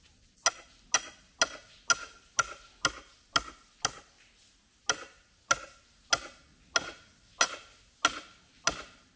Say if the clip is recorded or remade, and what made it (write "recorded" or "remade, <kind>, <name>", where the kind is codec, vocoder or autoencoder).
recorded